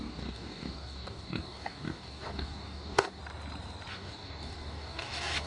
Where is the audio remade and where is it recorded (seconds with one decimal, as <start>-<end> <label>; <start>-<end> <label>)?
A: 0.0-3.2 remade; 3.2-3.9 recorded; 3.9-5.5 remade